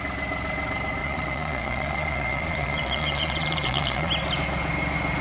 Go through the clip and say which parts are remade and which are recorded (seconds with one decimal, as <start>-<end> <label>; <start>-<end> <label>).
0.0-1.0 recorded; 1.0-4.1 remade; 4.1-5.2 recorded